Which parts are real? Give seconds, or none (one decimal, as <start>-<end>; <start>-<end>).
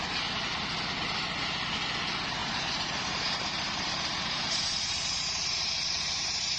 0.0-2.4